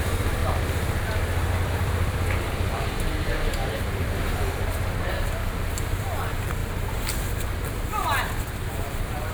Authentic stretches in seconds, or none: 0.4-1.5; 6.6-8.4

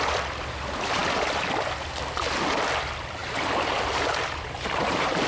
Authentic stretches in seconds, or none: 0.0-3.2